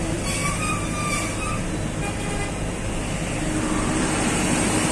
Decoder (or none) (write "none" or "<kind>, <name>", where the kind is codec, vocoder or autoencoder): none